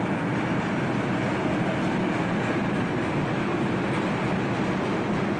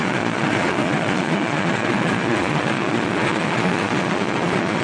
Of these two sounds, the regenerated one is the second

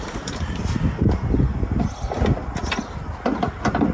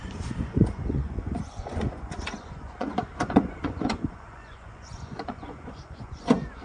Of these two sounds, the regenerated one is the second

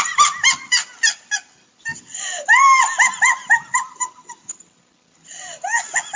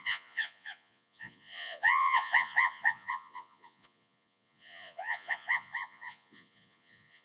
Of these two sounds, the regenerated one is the second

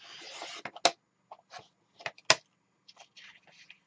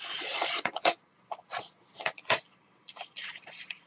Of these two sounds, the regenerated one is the second